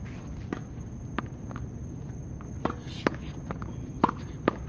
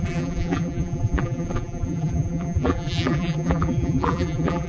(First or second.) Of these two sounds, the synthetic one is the second